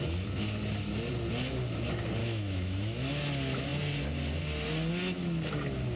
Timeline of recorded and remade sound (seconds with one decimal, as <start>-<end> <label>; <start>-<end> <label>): 0.0-2.2 recorded; 2.2-3.1 remade; 3.1-6.0 recorded